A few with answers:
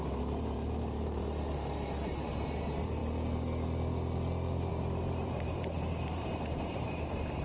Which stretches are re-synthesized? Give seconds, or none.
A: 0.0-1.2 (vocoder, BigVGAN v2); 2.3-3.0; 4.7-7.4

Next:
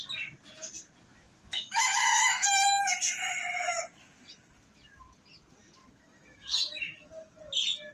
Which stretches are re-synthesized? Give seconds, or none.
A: 1.1-2.8 (autoencoder, DAC-VAE); 5.8-7.1

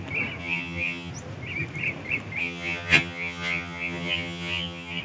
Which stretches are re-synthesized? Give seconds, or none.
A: 0.4-1.1 (vocoder, HiFi-GAN); 2.4-5.0

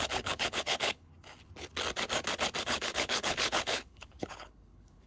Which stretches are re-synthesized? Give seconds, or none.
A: 0.0-1.1 (codec, HILCodec); 2.6-5.1

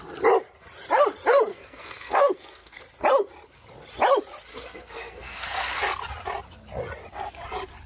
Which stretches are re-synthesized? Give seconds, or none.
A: 1.5-2.8 (codec, SNAC); 4.5-5.8

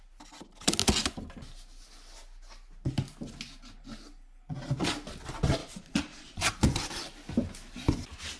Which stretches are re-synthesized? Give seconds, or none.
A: 5.6-6.5 (vocoder, Vocos)